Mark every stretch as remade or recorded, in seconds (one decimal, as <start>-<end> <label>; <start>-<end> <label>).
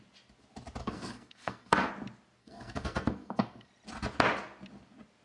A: 0.0-0.8 recorded; 0.8-1.9 remade; 1.9-2.4 recorded; 2.4-3.7 remade; 3.7-5.2 recorded